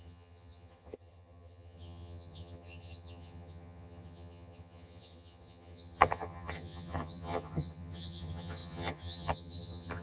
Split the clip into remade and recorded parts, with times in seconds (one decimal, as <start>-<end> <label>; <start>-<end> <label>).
0.0-10.0 remade